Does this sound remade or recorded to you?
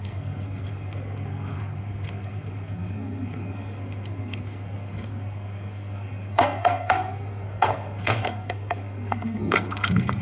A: remade